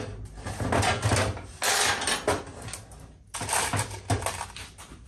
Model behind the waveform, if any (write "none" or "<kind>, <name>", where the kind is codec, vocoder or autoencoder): none